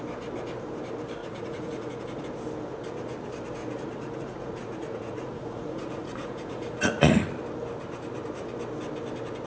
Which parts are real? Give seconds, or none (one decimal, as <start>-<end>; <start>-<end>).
0.0-1.2; 2.2-3.6; 7.3-9.5